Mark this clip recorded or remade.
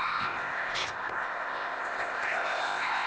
remade